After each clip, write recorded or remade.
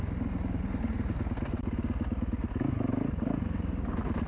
recorded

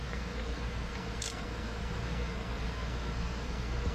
remade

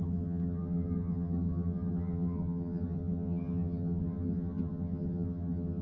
remade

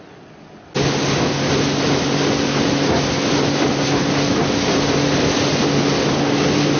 recorded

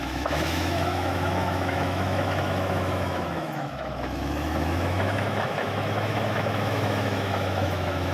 remade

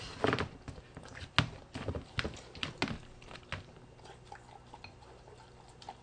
recorded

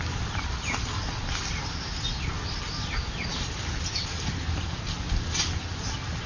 recorded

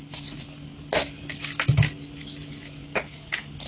recorded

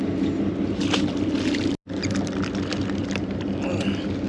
recorded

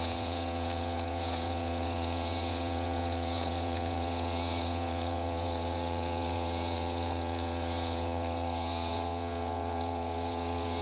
remade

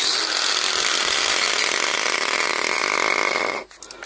recorded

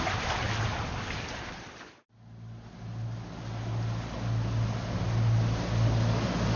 recorded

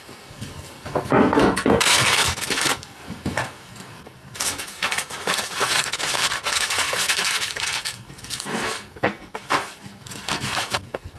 remade